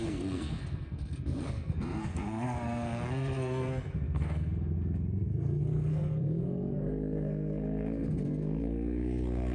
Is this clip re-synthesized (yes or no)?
yes